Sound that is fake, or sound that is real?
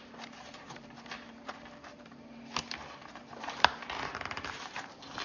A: fake